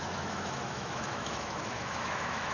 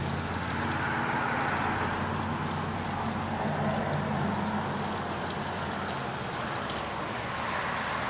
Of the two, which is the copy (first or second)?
first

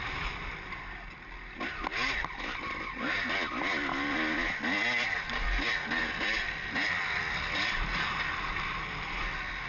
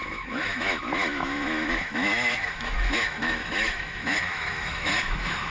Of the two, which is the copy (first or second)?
second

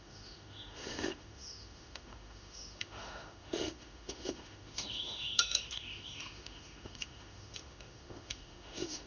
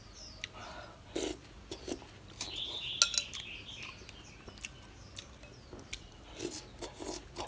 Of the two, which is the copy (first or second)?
first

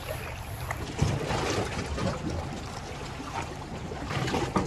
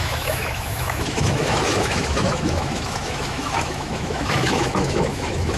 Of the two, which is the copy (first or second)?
second